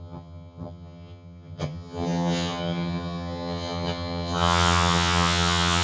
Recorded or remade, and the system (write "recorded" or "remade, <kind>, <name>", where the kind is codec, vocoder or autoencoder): remade, vocoder, HiFi-GAN